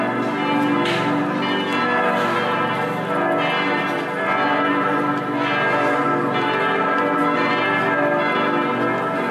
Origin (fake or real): real